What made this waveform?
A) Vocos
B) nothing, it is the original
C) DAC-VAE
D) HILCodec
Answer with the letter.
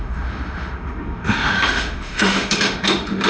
C